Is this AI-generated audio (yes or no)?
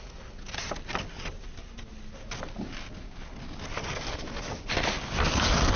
no